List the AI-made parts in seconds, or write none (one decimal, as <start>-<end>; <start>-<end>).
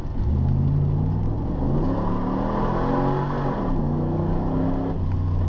3.8-4.5